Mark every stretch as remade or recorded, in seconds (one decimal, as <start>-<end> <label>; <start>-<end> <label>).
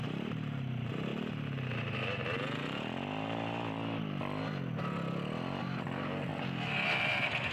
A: 0.0-1.1 remade; 1.1-5.6 recorded; 5.6-6.3 remade; 6.3-7.0 recorded; 7.0-7.5 remade